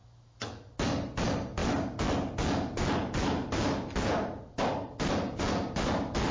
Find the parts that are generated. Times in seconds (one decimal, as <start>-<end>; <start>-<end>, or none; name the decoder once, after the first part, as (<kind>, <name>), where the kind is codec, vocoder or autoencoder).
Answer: 0.0-0.7 (autoencoder, DAC-VAE)